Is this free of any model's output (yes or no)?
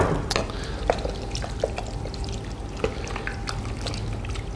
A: yes